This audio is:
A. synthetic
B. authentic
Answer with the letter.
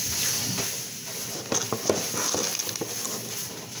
B